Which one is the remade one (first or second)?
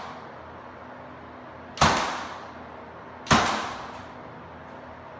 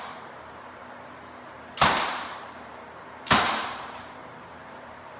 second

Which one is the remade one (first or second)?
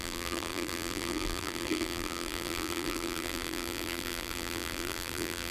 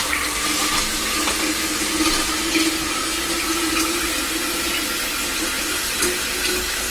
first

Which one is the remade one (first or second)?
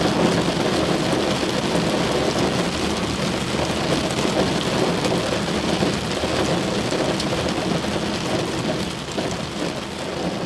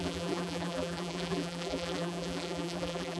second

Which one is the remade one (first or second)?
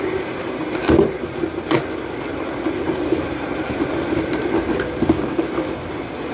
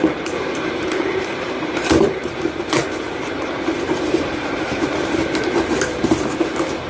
second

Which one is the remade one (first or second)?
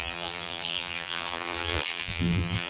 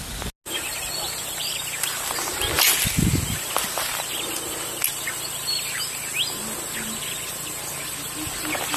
first